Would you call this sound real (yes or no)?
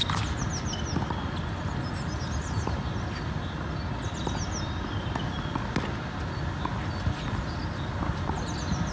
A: yes